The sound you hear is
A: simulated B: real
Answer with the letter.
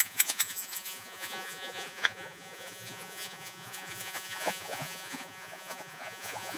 A